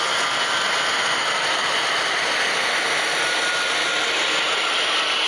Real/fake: real